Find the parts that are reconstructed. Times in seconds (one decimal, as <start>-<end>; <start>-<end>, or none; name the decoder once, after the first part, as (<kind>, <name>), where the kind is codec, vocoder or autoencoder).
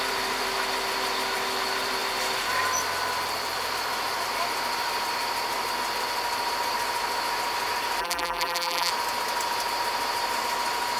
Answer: 8.0-8.9 (vocoder, BigVGAN v2)